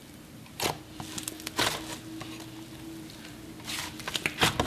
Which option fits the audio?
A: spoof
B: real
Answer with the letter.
B